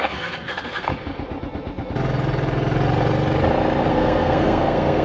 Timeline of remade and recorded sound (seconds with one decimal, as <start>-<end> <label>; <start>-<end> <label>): 0.0-0.9 remade; 0.9-3.9 recorded; 3.9-5.0 remade